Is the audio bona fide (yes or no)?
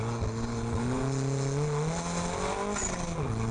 yes